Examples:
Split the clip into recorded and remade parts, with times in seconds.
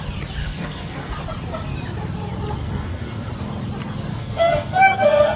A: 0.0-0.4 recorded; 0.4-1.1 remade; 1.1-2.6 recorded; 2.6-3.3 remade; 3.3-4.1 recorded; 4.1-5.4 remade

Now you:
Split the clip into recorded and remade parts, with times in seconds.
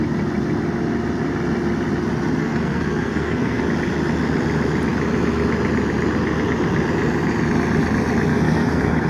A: 0.0-2.4 recorded; 2.4-3.6 remade; 3.6-8.3 recorded; 8.3-9.1 remade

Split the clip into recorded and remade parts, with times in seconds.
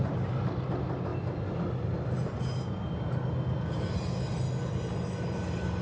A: 0.0-5.8 recorded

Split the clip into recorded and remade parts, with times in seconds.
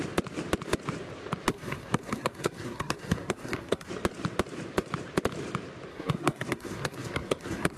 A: 0.0-1.5 recorded; 1.5-3.9 remade; 3.9-5.9 recorded; 5.9-7.8 remade